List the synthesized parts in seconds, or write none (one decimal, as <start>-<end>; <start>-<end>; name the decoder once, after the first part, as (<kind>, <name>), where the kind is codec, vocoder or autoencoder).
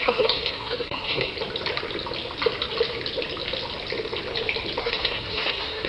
0.0-1.3 (codec, SNAC); 4.8-5.9